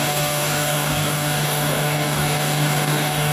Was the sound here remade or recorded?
remade